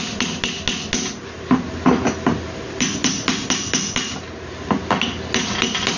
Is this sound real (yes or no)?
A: yes